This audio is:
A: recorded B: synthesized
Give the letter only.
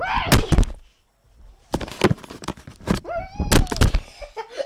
A